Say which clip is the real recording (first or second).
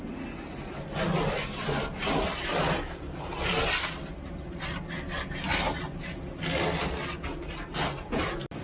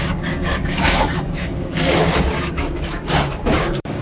first